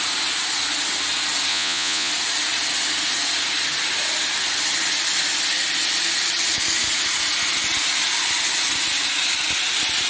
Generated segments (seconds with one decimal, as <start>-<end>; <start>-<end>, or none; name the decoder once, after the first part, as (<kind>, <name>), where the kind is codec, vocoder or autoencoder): 1.5-2.1 (vocoder, Vocos)